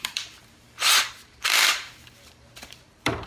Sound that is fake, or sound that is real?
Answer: fake